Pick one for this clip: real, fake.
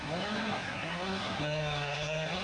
fake